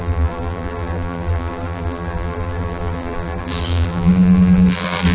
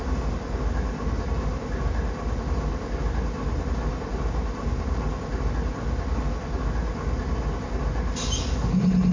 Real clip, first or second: second